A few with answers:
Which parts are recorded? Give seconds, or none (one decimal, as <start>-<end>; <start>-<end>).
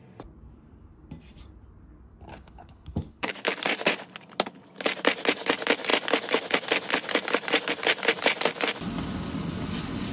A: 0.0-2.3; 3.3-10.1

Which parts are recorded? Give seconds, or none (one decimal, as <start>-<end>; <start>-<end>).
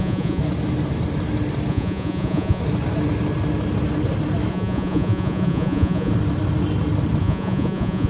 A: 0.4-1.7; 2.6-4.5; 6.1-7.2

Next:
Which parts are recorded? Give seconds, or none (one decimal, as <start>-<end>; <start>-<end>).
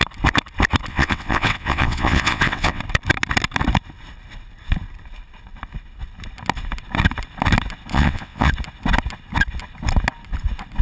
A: 0.0-0.9; 2.8-7.9; 8.5-10.8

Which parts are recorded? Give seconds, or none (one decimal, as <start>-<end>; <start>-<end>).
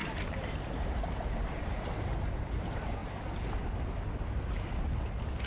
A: 1.8-3.0; 3.6-5.5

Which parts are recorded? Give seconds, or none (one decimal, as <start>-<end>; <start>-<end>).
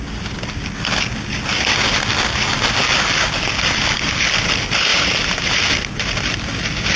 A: 0.0-4.9; 5.6-7.0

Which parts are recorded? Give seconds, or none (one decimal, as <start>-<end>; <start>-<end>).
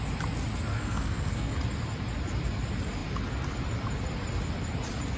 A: 0.0-0.7; 1.5-5.2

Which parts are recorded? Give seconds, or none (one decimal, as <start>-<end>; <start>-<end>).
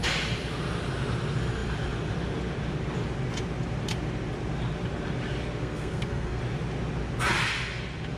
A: 0.0-5.6; 6.4-8.2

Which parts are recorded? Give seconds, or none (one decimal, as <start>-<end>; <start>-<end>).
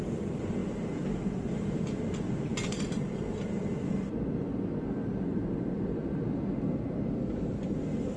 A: 0.6-1.4; 2.5-7.4